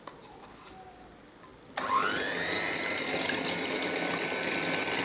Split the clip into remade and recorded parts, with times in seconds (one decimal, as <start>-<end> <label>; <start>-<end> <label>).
0.0-5.0 recorded